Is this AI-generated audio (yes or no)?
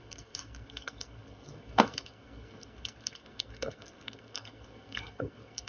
yes